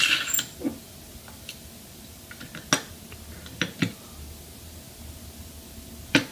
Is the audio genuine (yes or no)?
yes